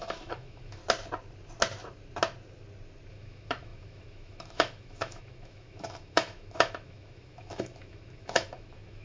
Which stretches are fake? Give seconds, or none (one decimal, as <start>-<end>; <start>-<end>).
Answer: 0.0-0.8; 3.1-9.0